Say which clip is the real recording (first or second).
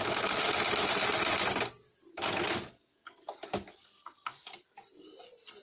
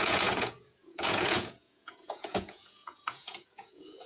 first